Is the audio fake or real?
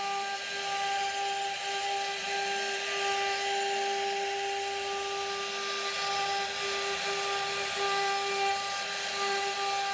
real